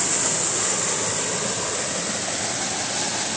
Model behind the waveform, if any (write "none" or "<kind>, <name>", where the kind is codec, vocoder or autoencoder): none